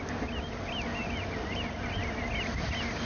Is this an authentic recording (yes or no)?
yes